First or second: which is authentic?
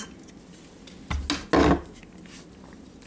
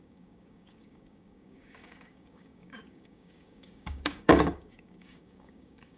first